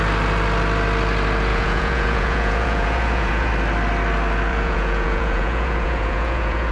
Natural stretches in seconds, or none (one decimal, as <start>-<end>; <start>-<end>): 0.0-1.5; 3.5-4.5